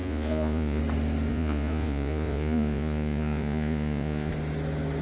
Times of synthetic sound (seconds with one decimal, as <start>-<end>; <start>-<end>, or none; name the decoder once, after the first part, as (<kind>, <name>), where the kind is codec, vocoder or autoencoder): 0.0-0.8 (vocoder, Vocos); 1.3-4.3